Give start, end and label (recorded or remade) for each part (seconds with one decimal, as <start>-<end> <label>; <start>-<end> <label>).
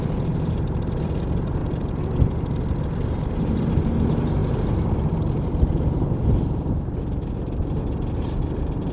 0.0-8.9 recorded